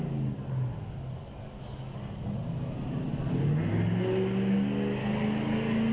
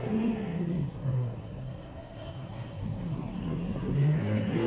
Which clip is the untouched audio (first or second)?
first